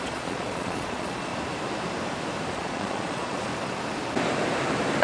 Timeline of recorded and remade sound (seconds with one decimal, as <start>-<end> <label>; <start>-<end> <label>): 0.0-1.3 remade; 1.3-2.5 recorded; 2.5-3.5 remade; 3.5-5.0 recorded